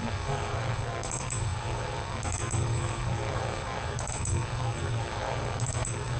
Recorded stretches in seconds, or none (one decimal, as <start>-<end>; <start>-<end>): none